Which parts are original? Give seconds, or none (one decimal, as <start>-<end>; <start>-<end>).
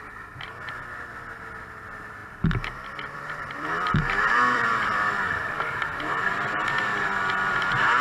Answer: 0.0-2.2; 6.8-8.0